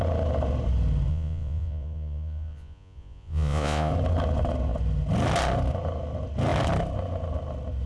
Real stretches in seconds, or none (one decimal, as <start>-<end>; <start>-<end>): 0.0-1.1; 3.9-7.9